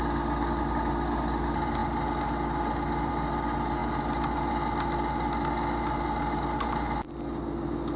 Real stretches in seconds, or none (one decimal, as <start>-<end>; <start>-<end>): 0.0-8.0

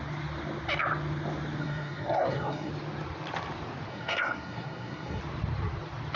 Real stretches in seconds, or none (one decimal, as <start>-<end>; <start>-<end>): 0.0-1.6; 2.7-3.9; 5.2-6.2